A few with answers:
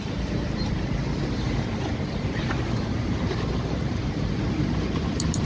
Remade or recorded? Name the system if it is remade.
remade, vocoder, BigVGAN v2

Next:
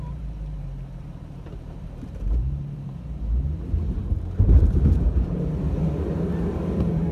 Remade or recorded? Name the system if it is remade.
remade, vocoder, BigVGAN v2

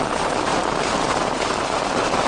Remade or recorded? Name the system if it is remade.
remade, vocoder, BigVGAN v2